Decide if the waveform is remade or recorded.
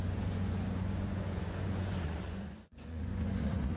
remade